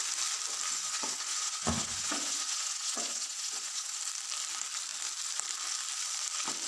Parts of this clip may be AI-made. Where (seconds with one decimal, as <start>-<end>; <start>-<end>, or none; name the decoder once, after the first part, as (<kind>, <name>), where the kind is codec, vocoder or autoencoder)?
0.7-4.0 (vocoder, Vocos)